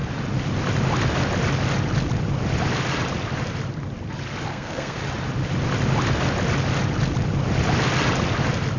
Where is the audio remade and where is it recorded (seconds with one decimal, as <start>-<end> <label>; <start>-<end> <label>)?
0.0-4.5 recorded; 4.5-5.0 remade; 5.0-8.8 recorded